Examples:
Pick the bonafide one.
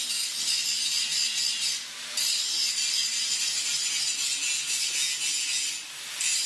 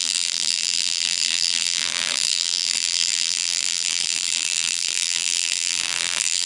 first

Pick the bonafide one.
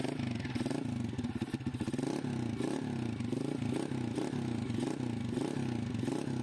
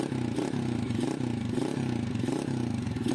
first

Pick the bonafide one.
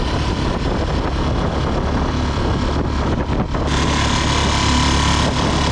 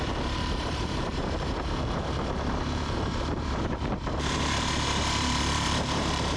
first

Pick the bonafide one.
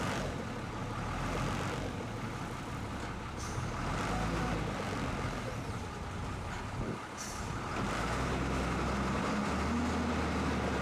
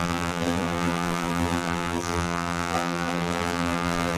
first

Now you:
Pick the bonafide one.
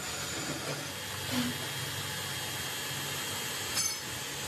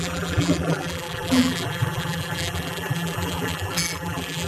first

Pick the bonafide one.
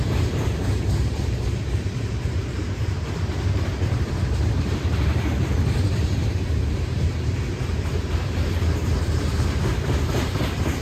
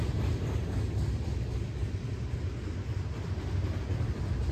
second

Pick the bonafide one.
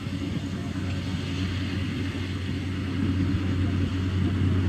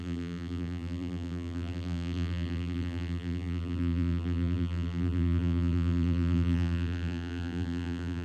first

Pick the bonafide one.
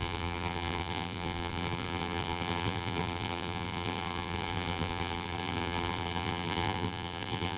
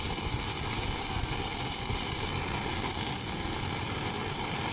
second